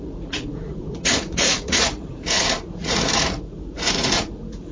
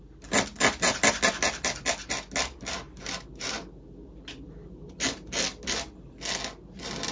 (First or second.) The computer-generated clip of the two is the first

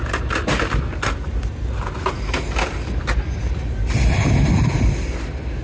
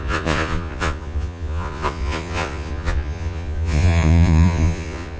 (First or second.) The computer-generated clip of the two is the second